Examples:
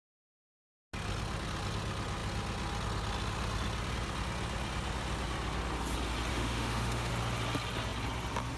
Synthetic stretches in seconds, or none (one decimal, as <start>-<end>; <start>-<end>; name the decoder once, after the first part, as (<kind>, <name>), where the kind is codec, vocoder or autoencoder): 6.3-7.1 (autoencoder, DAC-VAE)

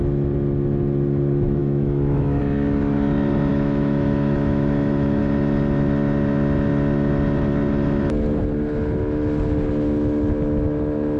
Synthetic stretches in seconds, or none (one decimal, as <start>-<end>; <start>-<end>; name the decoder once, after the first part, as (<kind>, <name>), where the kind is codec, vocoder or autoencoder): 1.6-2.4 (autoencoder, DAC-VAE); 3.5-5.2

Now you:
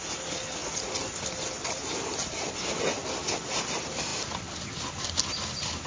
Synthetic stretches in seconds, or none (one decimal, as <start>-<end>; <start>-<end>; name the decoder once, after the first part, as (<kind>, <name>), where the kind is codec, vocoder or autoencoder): none

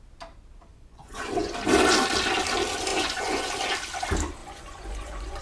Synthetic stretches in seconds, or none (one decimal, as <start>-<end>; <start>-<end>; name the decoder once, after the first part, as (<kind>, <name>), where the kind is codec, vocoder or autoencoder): 0.7-1.5 (vocoder, Vocos); 2.9-3.5; 4.4-5.4

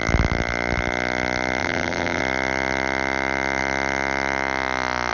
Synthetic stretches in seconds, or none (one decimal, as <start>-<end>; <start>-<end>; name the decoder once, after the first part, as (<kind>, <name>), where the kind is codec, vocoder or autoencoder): 1.6-2.2 (vocoder, BigVGAN v2)

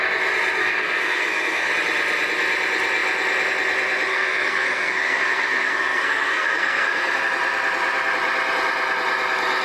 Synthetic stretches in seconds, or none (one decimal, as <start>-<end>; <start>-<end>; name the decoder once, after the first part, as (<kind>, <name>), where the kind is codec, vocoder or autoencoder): 0.6-1.7 (codec, SNAC); 4.1-7.2